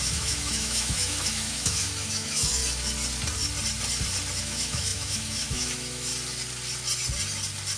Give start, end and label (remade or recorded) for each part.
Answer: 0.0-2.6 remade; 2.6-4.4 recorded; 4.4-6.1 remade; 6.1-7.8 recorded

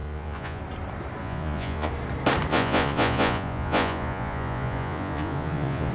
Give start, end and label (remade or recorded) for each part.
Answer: 0.0-0.6 remade; 0.6-1.2 recorded; 1.2-1.9 remade; 1.9-2.5 recorded; 2.5-5.9 remade

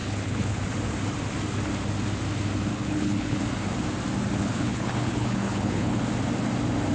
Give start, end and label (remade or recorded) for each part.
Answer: 0.0-0.6 remade; 0.6-2.7 recorded; 2.7-3.4 remade; 3.4-4.4 recorded; 4.4-6.0 remade; 6.0-6.9 recorded